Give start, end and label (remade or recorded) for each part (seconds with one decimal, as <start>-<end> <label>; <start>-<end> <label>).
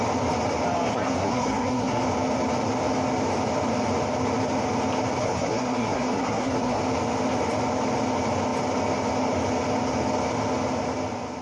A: 0.0-0.9 recorded; 0.9-2.0 remade; 2.0-5.2 recorded; 5.2-6.8 remade; 6.8-11.4 recorded